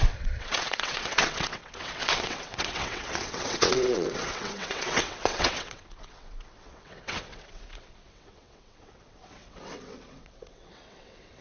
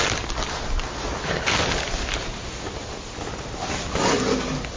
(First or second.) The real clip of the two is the second